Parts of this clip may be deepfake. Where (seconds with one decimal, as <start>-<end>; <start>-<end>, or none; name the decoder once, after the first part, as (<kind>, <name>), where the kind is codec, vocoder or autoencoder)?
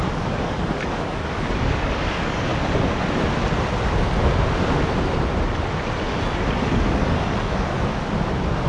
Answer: 0.0-2.5 (codec, DAC); 6.5-7.7